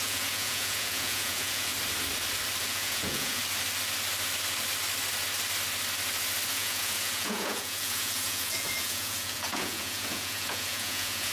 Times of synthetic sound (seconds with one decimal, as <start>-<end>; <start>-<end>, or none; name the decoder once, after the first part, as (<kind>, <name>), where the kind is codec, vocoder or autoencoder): 0.0-1.7 (vocoder, Vocos); 2.6-3.4; 6.5-11.3